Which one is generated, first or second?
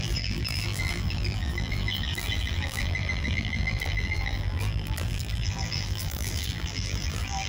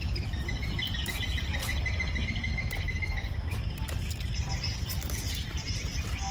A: first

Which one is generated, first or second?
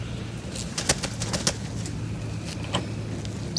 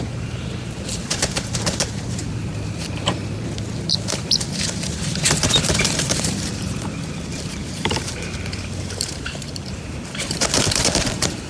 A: second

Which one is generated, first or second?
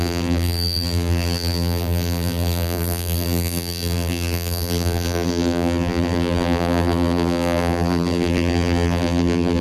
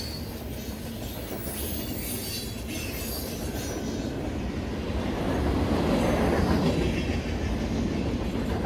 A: first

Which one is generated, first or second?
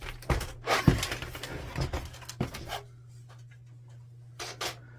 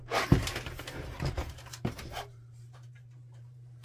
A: second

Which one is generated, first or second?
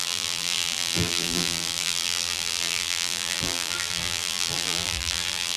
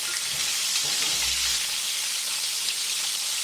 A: first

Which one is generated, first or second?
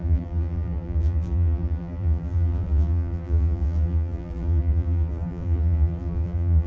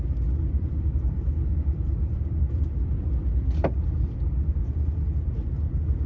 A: first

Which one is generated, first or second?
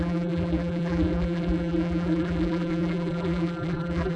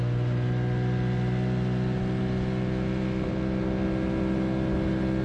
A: first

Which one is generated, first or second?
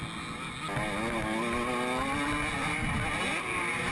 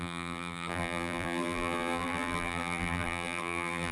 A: second